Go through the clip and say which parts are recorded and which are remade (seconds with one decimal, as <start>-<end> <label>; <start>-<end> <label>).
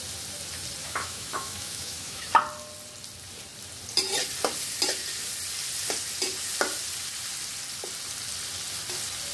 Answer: 0.0-0.8 recorded; 0.8-2.3 remade; 2.3-9.3 recorded